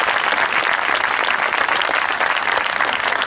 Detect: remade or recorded recorded